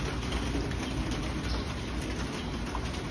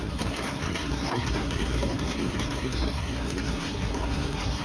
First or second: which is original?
first